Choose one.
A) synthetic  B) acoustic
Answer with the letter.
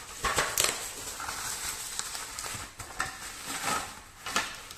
B